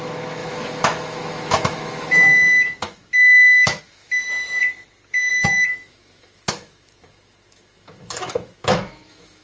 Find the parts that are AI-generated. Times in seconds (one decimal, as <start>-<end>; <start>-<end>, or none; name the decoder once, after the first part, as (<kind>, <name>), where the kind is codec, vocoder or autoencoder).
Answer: 0.0-4.6 (autoencoder, DAC-VAE); 5.3-9.4